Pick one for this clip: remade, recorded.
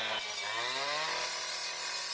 recorded